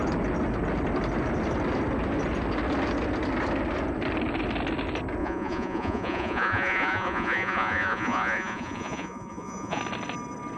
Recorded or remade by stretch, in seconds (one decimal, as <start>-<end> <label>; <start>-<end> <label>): 0.0-5.2 recorded; 5.2-9.8 remade; 9.8-10.6 recorded

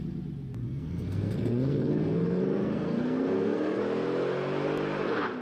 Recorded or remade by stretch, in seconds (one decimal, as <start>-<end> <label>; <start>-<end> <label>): 0.0-0.6 recorded; 0.6-3.8 remade; 3.8-5.4 recorded

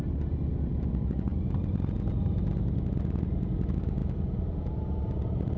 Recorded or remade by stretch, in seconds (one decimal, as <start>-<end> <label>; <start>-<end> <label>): 0.0-5.6 recorded

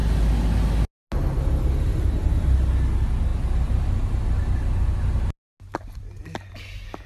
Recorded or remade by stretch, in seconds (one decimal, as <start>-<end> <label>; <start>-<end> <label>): 0.0-7.1 recorded